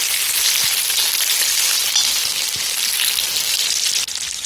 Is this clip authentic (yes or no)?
yes